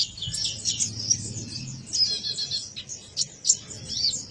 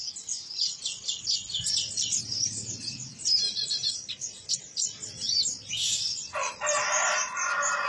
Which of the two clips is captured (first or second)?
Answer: first